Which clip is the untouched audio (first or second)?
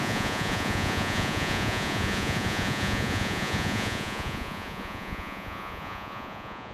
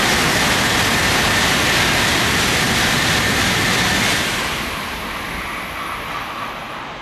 second